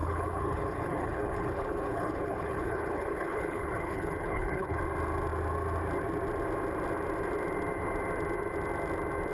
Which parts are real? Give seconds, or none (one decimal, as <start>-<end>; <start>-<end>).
4.8-9.3